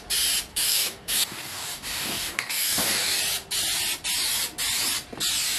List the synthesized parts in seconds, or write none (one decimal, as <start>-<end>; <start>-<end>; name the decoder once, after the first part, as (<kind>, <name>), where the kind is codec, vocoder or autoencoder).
0.5-3.2 (codec, DAC)